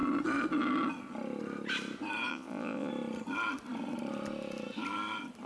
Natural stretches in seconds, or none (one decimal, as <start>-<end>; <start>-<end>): 0.0-2.3; 2.9-5.5